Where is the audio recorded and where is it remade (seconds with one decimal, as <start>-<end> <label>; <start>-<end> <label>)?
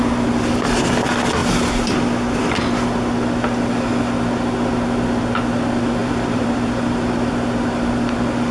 0.0-6.0 recorded; 6.0-7.3 remade; 7.3-8.5 recorded